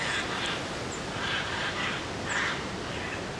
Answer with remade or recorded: recorded